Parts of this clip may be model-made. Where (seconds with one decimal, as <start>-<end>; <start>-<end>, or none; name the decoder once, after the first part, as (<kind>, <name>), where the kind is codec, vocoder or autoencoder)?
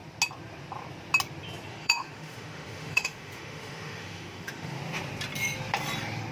1.7-4.8 (autoencoder, DAC-VAE)